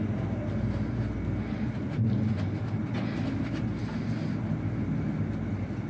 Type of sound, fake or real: real